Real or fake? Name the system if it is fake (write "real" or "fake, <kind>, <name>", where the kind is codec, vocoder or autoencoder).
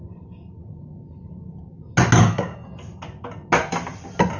real